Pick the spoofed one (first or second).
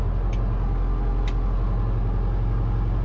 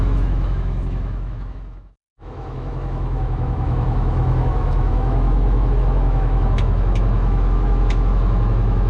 second